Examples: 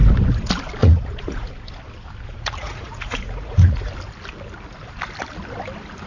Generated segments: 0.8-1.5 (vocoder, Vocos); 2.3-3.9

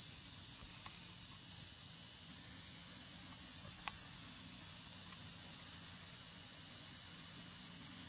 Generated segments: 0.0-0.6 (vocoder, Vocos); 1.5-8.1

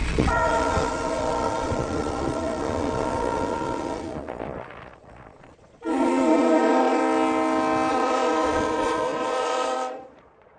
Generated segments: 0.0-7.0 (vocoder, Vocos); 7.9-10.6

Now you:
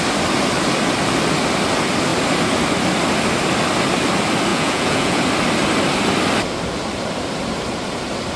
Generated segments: 4.5-5.2 (vocoder, Vocos)

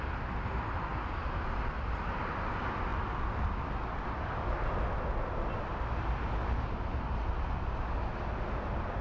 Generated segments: none

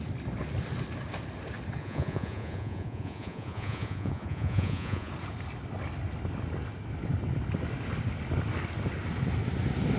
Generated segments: 1.8-5.1 (vocoder, Vocos)

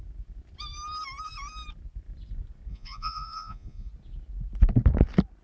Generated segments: 2.7-3.9 (vocoder, Vocos)